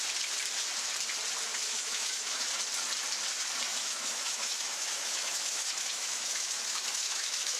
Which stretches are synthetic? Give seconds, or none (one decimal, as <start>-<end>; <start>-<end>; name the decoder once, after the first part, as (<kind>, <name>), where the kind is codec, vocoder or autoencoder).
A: 1.5-2.5 (autoencoder, DAC-VAE); 3.7-7.6